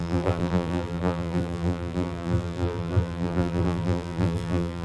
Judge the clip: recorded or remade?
remade